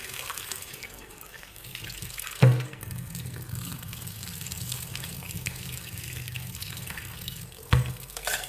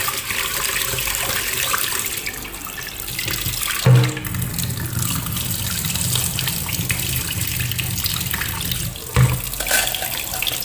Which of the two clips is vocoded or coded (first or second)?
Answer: first